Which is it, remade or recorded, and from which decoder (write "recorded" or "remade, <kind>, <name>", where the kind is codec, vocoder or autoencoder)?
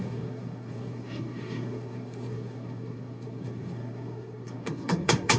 remade, codec, SNAC